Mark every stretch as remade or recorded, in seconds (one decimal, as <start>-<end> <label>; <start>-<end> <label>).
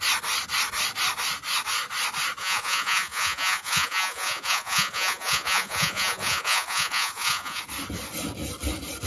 0.0-2.4 recorded; 2.4-7.6 remade; 7.6-9.1 recorded